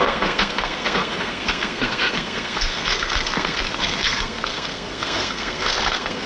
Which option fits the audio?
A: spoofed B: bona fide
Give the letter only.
A